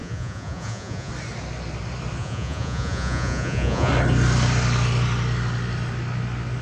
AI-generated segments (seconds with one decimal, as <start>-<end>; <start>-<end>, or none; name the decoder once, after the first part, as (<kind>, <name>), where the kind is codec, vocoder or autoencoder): 0.0-1.1 (vocoder, Vocos); 2.2-3.9